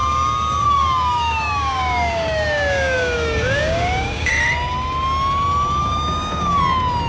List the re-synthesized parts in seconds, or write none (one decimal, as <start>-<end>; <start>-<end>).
0.0-4.3; 5.8-6.6